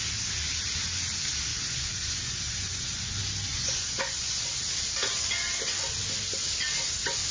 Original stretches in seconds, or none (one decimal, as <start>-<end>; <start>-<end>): 0.0-1.5; 3.1-3.5; 4.4-7.3